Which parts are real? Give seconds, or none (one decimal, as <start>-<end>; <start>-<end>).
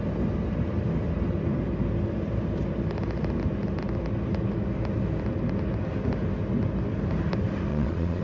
0.0-7.7